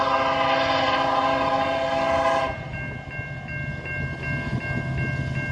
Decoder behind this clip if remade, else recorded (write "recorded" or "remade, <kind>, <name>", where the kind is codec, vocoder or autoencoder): recorded